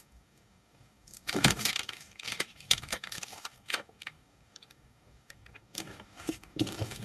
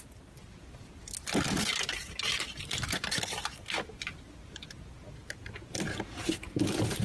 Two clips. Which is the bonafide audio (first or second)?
second